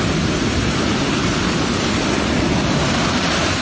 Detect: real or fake real